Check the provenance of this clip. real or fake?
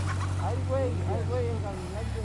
real